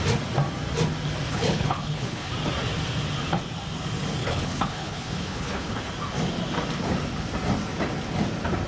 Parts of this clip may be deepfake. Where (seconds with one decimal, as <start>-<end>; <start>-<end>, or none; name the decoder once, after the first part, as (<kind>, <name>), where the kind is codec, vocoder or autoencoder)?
1.3-2.3 (codec, HILCodec); 4.2-5.9